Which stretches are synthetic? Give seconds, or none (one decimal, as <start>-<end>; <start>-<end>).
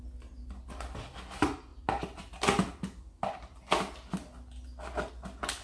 none